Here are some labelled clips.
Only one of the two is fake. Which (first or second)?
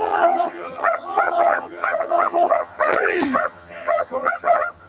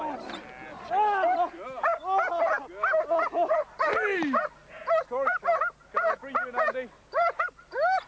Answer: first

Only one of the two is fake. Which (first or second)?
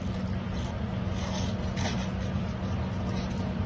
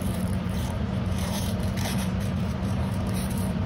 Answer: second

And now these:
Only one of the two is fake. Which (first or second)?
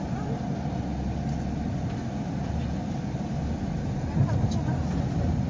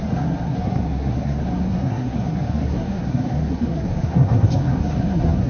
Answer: second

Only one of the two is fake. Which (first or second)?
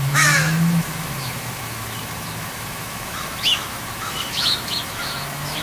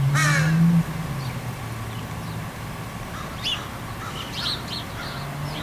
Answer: first